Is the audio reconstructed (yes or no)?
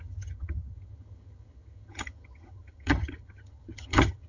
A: yes